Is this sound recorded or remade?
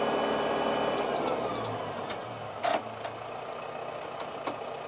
recorded